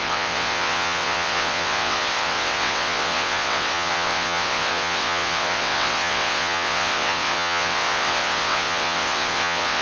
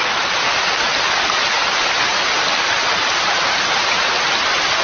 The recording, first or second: second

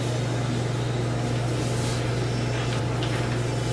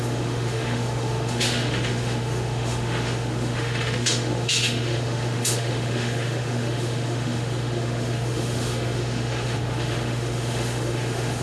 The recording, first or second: first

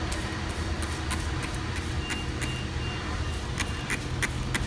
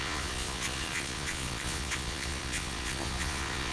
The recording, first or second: first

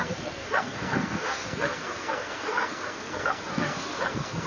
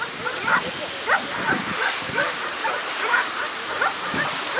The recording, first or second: second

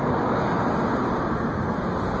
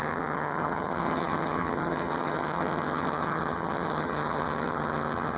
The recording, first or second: first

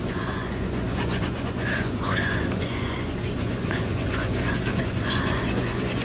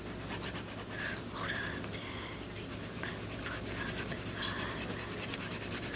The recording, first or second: second